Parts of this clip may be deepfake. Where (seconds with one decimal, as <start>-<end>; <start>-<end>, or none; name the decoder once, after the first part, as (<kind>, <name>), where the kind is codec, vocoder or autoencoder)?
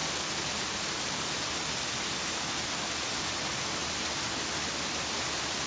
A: 2.4-5.7 (vocoder, BigVGAN v2)